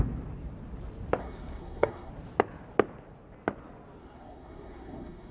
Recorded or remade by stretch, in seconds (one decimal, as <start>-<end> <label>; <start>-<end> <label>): 0.0-1.2 recorded; 1.2-2.1 remade; 2.1-4.0 recorded; 4.0-5.3 remade